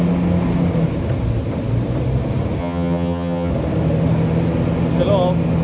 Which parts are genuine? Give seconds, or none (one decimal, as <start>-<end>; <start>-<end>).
0.0-2.6; 3.5-5.6